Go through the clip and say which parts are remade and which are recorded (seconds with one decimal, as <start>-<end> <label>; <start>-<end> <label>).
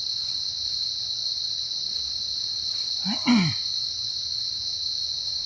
0.0-5.5 recorded